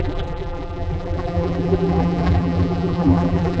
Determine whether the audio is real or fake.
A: fake